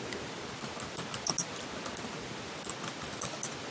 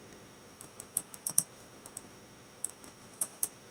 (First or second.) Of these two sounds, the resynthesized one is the second